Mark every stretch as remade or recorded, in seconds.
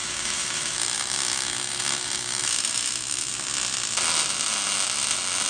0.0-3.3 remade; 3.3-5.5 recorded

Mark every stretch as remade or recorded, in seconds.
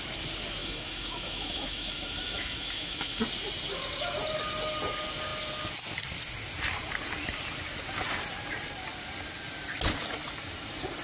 0.0-0.6 recorded; 0.6-3.2 remade; 3.2-11.0 recorded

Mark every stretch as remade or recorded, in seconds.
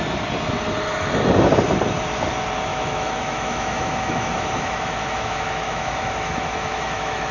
0.0-2.7 recorded; 2.7-7.3 remade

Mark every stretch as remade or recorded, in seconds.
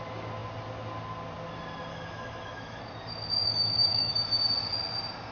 0.0-1.9 recorded; 1.9-2.8 remade; 2.8-3.4 recorded; 3.4-4.1 remade; 4.1-5.3 recorded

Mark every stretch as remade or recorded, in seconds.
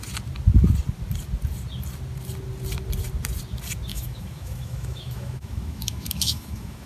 0.0-3.9 recorded; 3.9-6.9 remade